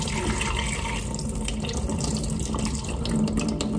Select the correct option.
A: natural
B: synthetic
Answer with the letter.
A